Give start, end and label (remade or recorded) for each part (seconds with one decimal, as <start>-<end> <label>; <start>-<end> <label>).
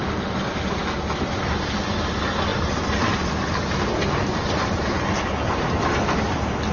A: 0.0-6.7 recorded